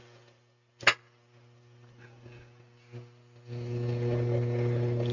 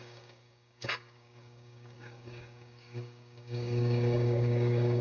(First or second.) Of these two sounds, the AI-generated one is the second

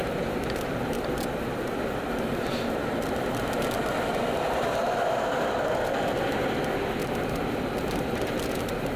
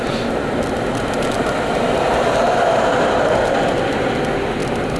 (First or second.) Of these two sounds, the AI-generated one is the first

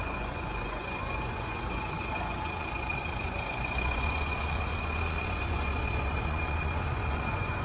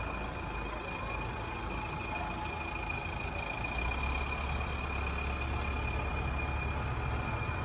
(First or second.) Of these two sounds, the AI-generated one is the first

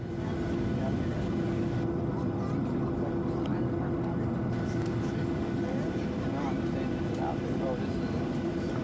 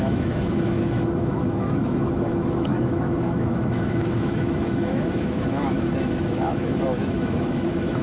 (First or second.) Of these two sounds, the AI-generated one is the second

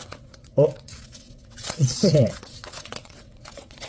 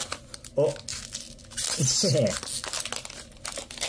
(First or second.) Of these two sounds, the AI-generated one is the first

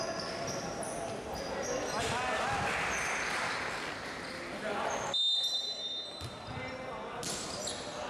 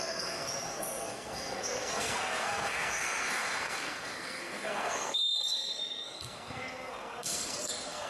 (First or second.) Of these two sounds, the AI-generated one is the second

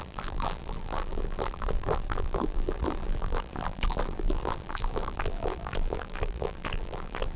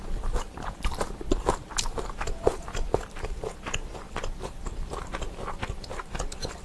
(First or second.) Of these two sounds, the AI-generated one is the first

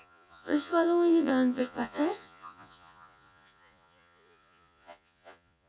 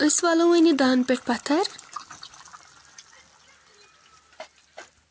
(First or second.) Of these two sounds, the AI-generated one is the first